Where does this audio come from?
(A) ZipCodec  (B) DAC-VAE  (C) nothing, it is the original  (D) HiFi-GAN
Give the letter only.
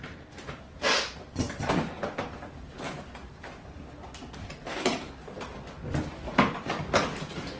C